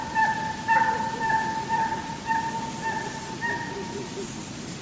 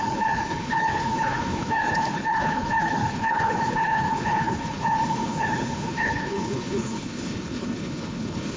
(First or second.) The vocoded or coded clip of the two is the second